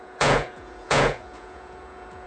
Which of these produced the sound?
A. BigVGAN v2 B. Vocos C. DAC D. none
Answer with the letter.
B